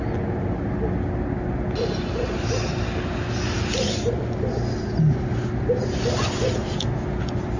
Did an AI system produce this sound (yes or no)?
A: no